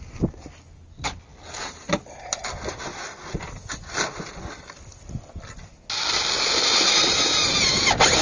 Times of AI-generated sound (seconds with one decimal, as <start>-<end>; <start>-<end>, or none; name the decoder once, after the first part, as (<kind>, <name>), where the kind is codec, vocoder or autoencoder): none